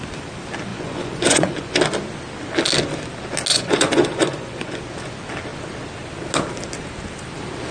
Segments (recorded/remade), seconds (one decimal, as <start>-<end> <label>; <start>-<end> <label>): 0.0-0.7 recorded; 0.7-1.8 remade; 1.8-3.5 recorded; 3.5-4.8 remade; 4.8-7.7 recorded